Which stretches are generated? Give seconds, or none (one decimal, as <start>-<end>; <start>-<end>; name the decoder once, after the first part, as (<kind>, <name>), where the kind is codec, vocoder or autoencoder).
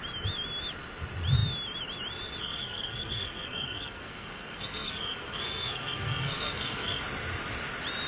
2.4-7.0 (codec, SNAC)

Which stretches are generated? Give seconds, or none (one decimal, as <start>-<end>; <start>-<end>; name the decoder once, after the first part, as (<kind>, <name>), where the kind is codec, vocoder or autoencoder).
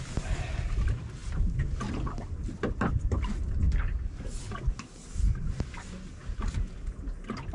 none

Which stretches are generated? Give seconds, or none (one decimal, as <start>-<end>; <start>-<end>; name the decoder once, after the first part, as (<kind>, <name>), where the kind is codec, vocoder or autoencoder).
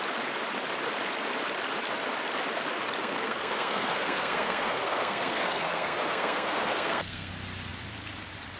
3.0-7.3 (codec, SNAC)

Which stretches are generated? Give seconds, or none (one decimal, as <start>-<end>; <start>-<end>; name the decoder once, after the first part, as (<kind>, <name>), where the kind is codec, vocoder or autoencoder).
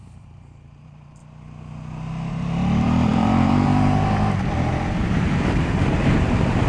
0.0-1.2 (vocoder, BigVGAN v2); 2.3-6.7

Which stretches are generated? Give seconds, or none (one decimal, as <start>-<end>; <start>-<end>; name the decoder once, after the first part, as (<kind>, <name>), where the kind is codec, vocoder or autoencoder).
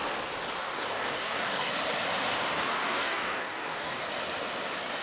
0.6-1.7 (codec, DAC); 2.8-4.0